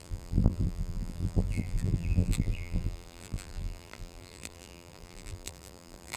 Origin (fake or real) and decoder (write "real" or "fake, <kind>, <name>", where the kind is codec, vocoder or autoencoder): fake, vocoder, BigVGAN v2